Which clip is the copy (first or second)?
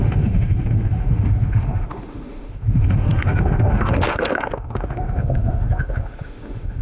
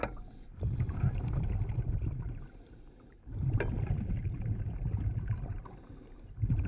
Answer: first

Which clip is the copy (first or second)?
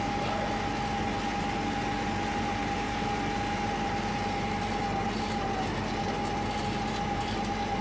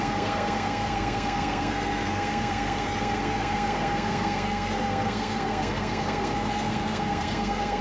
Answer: second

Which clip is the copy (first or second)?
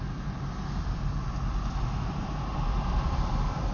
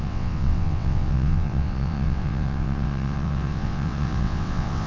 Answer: second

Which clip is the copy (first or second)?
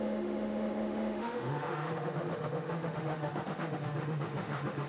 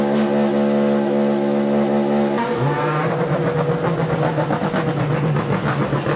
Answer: first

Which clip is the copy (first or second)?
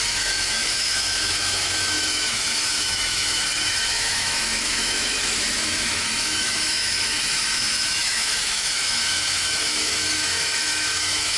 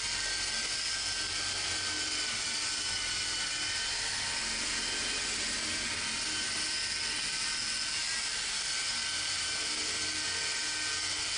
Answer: first